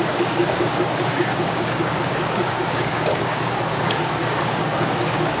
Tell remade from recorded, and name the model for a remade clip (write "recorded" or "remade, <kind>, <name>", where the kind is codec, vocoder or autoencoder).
remade, codec, DAC